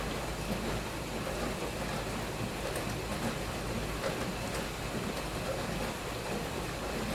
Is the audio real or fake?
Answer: real